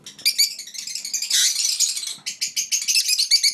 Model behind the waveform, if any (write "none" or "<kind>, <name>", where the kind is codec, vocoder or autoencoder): none